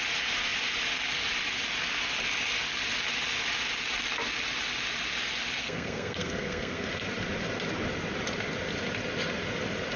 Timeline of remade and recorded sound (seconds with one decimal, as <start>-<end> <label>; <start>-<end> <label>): 0.0-5.6 recorded; 5.6-6.9 remade; 6.9-10.0 recorded